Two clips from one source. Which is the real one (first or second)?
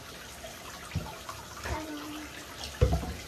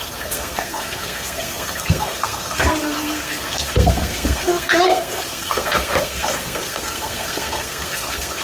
first